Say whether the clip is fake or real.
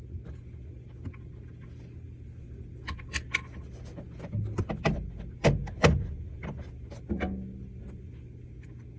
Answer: real